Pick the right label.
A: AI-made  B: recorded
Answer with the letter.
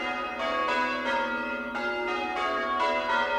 B